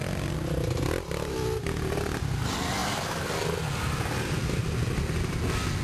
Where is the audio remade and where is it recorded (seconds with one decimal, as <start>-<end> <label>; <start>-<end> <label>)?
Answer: 0.0-0.7 remade; 0.7-5.8 recorded